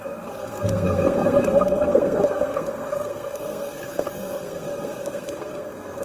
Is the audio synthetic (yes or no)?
yes